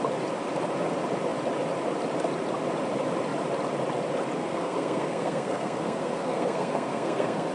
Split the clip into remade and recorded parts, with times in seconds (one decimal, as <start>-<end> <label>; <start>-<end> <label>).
0.0-4.4 recorded; 4.4-7.5 remade